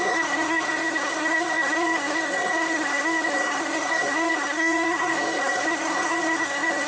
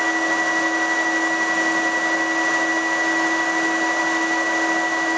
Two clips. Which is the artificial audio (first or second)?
first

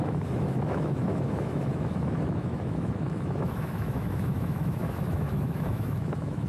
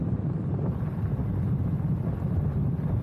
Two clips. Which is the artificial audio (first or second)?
first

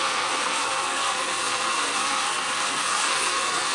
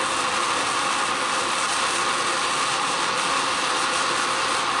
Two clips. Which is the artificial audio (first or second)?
first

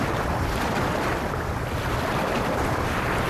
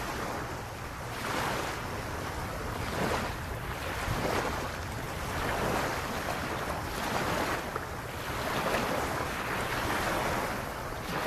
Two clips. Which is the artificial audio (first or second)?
first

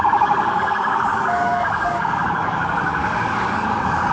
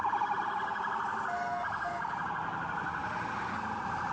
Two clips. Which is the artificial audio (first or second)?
first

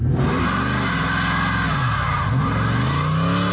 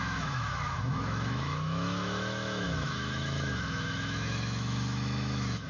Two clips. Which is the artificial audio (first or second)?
second